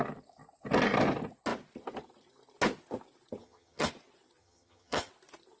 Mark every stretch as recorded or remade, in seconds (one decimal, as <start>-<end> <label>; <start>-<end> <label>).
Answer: 0.0-3.4 recorded; 3.4-3.9 remade; 3.9-4.4 recorded; 4.4-5.1 remade; 5.1-5.6 recorded